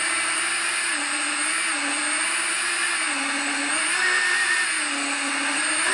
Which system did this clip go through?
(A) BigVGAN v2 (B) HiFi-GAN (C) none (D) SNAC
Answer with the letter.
C